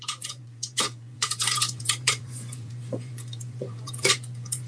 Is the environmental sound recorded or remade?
remade